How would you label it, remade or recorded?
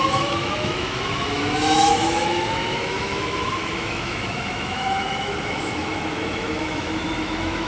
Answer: remade